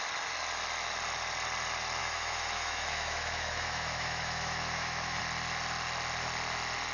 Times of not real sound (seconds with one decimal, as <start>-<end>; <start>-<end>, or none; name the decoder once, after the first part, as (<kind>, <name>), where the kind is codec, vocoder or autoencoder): 2.0-5.2 (autoencoder, DAC-VAE)